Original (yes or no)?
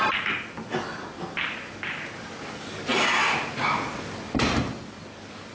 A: yes